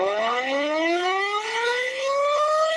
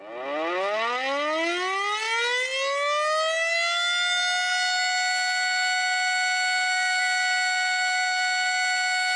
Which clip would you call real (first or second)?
second